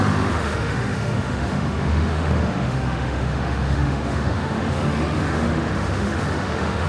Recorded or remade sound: remade